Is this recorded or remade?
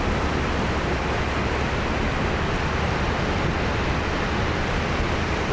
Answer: recorded